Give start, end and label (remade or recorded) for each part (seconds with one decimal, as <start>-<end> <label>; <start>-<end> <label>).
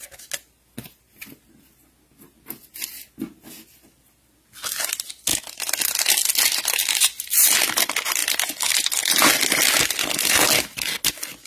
0.0-11.5 recorded